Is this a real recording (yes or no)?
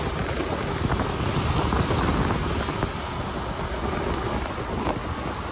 yes